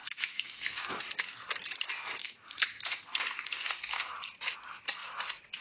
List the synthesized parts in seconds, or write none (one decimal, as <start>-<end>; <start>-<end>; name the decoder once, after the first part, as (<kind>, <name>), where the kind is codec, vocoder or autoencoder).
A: 0.0-0.9 (codec, SNAC); 2.2-4.1